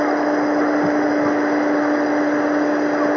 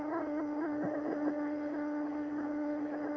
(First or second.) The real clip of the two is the first